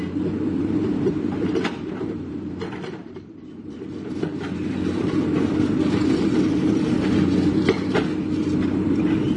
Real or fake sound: fake